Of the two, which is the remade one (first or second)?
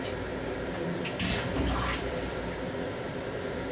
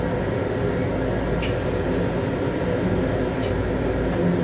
first